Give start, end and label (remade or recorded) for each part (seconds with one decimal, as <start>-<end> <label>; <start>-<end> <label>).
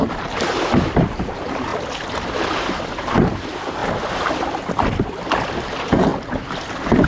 0.0-1.7 remade; 1.7-2.5 recorded; 2.5-3.8 remade; 3.8-5.5 recorded; 5.5-6.1 remade; 6.1-6.6 recorded; 6.6-7.1 remade